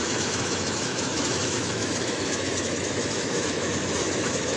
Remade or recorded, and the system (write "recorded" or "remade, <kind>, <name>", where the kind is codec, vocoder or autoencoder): remade, autoencoder, DAC-VAE